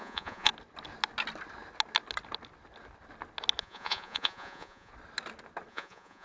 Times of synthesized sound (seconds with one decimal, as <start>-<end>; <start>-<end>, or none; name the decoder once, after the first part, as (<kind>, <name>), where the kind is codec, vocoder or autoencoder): 0.0-0.5 (vocoder, Vocos); 3.6-4.9; 5.7-6.2

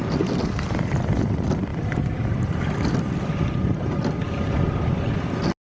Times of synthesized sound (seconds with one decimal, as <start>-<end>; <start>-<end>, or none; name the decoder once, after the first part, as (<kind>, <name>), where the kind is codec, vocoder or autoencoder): none

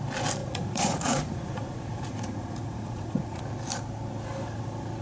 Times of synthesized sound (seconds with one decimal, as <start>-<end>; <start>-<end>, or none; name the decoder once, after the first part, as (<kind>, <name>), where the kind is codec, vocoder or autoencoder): 0.4-3.4 (vocoder, Vocos)

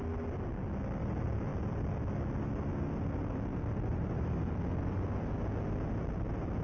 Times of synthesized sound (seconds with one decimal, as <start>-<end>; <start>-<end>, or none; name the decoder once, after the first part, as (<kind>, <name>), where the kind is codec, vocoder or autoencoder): 3.9-4.4 (vocoder, BigVGAN v2)

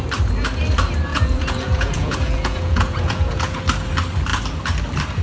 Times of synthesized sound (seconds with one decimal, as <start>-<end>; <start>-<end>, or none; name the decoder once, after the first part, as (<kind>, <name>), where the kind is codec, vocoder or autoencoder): 1.1-3.6 (vocoder, Vocos)

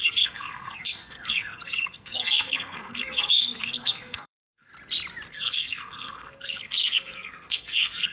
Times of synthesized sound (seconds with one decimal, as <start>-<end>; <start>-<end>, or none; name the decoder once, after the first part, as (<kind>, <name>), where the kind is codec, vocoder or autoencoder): 0.0-4.7 (codec, SNAC); 5.3-8.1